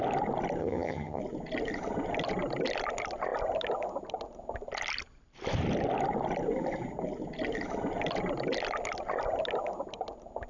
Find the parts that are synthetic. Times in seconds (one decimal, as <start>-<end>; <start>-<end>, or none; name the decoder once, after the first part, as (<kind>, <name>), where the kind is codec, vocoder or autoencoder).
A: 0.6-1.2 (vocoder, HiFi-GAN)